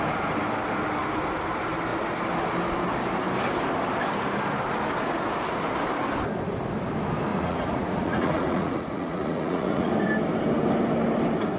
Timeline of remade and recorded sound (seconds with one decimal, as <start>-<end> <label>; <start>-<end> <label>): 0.0-7.3 recorded; 7.3-9.9 remade; 9.9-11.6 recorded